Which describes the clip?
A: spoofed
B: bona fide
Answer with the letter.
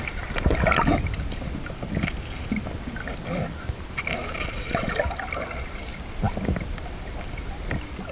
B